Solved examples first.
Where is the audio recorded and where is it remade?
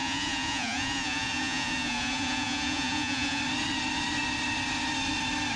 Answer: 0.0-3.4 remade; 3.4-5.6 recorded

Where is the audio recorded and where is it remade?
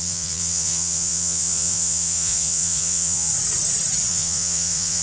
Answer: 0.0-3.3 remade; 3.3-4.1 recorded; 4.1-5.0 remade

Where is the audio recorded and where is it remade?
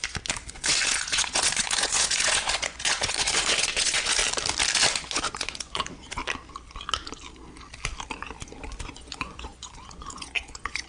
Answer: 0.0-0.5 recorded; 0.5-4.2 remade; 4.2-5.0 recorded; 5.0-6.2 remade; 6.2-8.9 recorded; 8.9-10.9 remade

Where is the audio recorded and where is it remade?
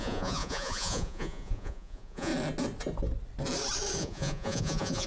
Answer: 0.0-2.3 remade; 2.3-4.0 recorded; 4.0-5.1 remade